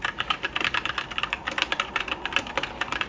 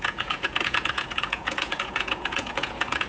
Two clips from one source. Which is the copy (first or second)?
second